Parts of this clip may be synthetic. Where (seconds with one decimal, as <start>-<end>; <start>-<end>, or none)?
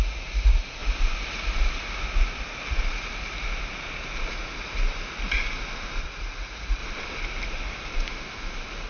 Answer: 0.0-0.8; 6.0-6.8